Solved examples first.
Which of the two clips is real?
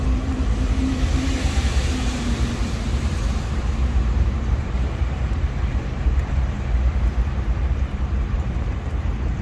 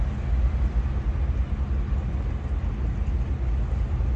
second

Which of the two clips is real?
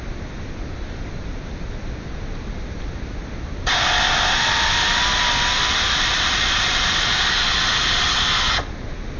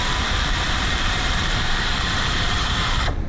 first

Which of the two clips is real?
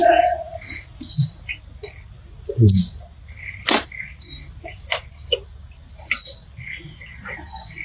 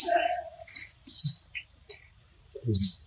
first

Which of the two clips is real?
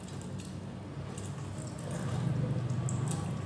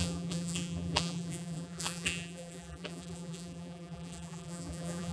first